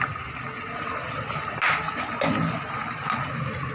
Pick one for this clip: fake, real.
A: real